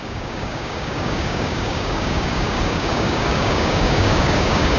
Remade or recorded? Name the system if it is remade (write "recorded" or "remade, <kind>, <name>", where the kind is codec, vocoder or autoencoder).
remade, codec, DAC